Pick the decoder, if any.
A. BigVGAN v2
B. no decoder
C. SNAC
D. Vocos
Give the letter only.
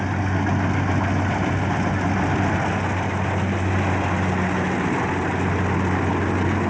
B